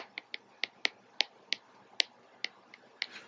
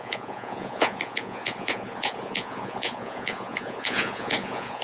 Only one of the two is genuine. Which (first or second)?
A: first